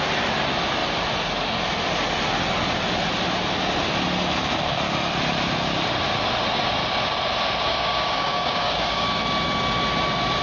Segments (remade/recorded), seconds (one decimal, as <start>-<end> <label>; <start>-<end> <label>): 0.0-7.7 recorded; 7.7-9.2 remade; 9.2-10.4 recorded